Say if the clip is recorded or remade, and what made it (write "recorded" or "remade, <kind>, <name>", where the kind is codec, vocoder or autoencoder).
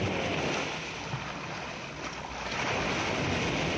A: recorded